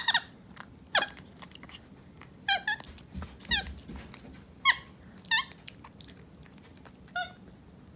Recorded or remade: recorded